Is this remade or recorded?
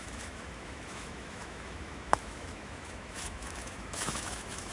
remade